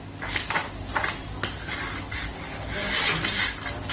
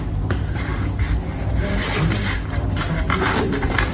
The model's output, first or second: second